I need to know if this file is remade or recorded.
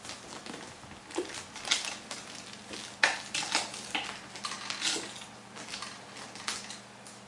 recorded